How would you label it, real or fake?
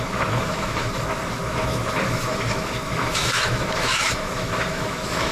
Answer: fake